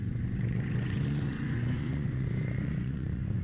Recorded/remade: remade